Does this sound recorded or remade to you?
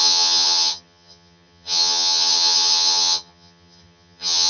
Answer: remade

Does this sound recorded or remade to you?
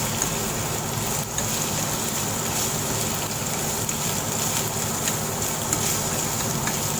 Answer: recorded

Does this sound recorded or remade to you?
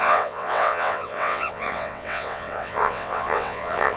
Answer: remade